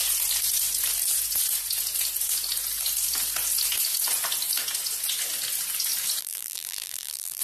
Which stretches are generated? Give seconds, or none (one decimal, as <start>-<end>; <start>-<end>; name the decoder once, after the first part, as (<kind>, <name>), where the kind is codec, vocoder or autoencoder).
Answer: 6.2-7.4 (vocoder, BigVGAN v2)